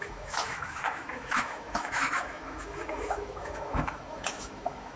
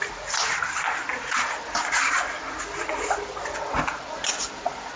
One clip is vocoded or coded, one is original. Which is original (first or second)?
second